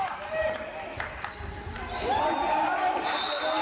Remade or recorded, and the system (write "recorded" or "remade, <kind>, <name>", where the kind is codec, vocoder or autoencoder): recorded